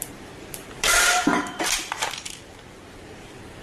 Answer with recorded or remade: remade